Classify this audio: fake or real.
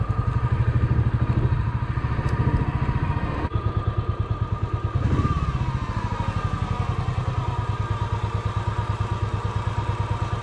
real